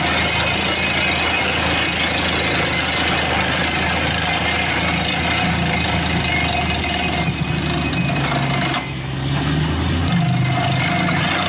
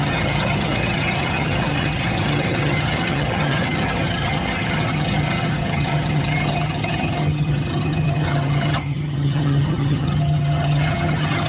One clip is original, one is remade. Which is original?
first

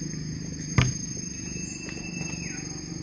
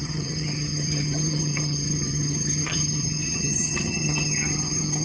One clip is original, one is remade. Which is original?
first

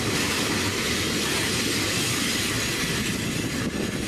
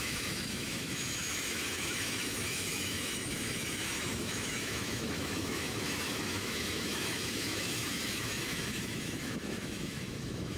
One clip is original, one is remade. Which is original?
first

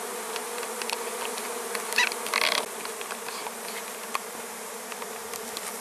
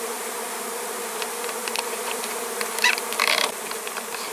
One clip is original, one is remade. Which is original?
first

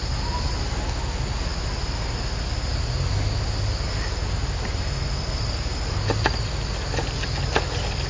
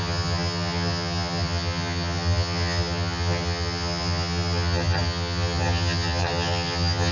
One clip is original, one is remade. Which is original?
first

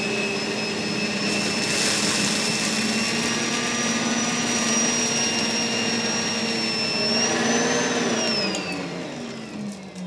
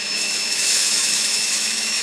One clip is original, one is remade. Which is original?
first